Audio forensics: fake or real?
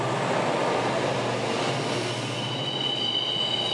real